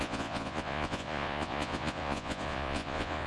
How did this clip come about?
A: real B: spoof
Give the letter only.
B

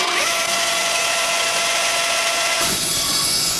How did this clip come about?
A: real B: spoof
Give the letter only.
B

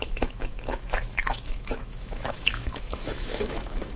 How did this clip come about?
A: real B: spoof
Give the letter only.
B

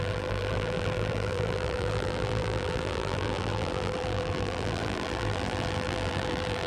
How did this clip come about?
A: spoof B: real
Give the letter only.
A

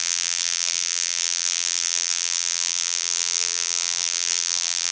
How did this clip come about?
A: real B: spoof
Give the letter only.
B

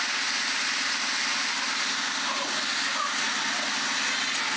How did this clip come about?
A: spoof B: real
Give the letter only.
B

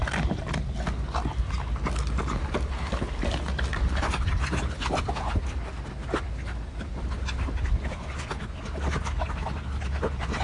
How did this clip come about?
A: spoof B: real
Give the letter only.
B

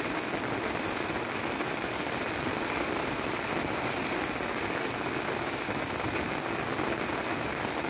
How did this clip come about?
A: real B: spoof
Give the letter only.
A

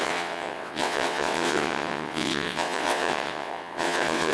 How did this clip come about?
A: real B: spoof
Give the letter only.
B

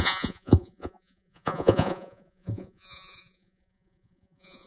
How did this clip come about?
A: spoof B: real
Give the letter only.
A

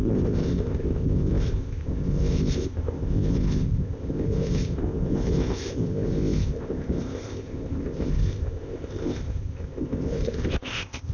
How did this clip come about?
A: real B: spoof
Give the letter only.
B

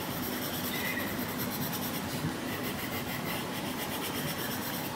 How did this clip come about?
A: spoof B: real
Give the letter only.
B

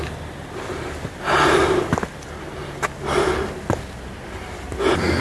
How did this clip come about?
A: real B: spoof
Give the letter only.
A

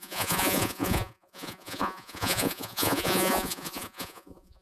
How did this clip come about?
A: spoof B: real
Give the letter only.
A